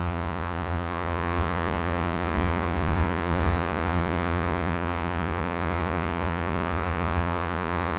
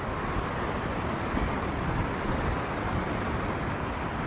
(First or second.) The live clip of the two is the second